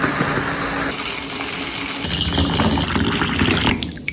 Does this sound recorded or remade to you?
recorded